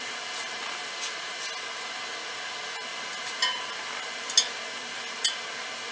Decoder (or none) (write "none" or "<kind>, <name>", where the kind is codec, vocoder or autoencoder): none